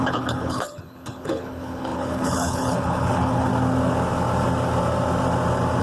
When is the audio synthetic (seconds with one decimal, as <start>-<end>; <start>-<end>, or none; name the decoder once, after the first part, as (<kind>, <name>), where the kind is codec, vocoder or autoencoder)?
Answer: 0.0-3.5 (codec, HILCodec)